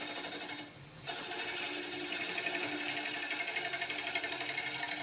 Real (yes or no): yes